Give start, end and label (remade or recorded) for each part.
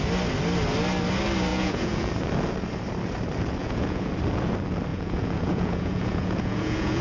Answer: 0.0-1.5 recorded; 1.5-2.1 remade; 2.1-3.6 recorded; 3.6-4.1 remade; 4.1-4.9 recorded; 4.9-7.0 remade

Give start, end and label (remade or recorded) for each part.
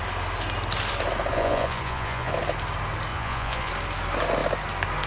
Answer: 0.0-1.3 recorded; 1.3-2.3 remade; 2.3-3.1 recorded; 3.1-3.7 remade; 3.7-5.1 recorded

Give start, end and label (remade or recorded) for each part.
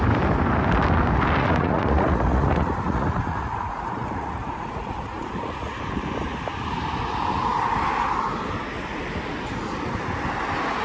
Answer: 0.0-1.4 recorded; 1.4-5.8 remade; 5.8-10.8 recorded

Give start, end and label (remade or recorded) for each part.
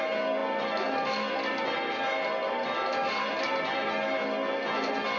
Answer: 0.0-5.2 recorded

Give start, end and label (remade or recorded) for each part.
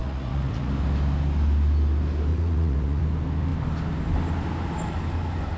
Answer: 0.0-0.7 remade; 0.7-2.3 recorded; 2.3-3.0 remade; 3.0-5.6 recorded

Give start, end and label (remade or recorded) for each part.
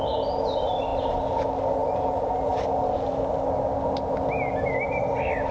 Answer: 0.0-5.5 recorded